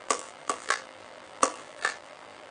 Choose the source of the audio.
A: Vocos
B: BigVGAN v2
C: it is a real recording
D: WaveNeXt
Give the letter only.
B